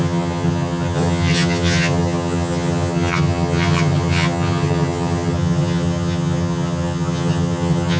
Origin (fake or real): fake